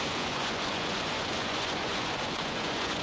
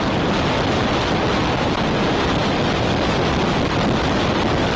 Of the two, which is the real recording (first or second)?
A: second